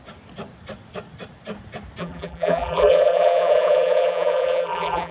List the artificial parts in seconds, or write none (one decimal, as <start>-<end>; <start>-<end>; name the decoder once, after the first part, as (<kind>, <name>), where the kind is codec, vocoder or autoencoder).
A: 2.0-5.1 (vocoder, BigVGAN v2)